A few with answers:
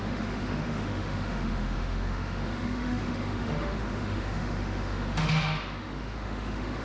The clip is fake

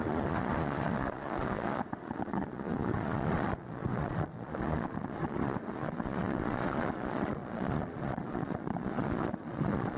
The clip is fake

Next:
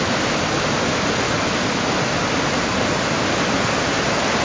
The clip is real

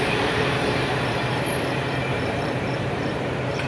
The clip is fake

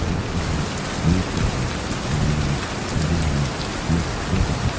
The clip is real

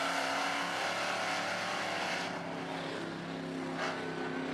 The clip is real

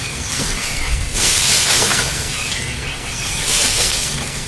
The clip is fake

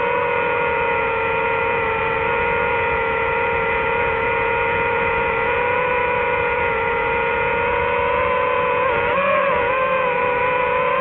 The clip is fake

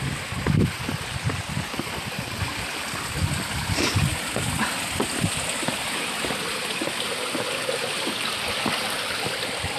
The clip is real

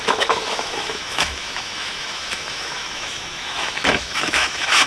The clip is fake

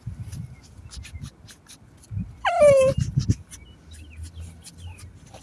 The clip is real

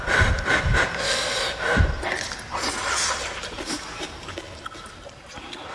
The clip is real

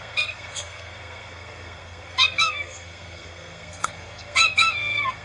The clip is fake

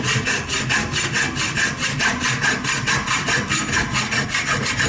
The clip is real